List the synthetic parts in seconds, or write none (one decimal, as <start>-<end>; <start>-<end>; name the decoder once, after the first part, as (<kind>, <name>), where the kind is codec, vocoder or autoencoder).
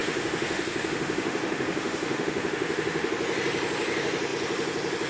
0.0-3.1 (autoencoder, DAC-VAE)